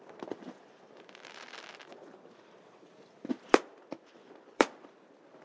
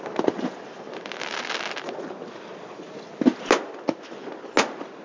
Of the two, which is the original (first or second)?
second